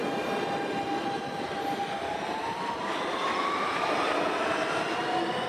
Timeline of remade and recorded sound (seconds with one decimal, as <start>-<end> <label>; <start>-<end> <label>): 0.0-5.5 recorded